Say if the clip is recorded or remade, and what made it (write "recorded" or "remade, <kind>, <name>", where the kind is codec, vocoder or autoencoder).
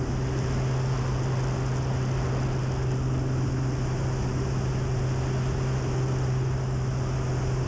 recorded